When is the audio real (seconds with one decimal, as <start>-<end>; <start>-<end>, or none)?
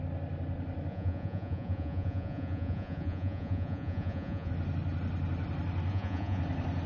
0.0-0.9; 4.5-5.9; 6.4-6.9